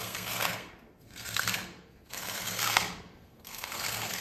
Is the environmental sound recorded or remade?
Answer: remade